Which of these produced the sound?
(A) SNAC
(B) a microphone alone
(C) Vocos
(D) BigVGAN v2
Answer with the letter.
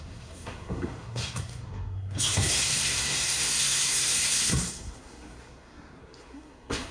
A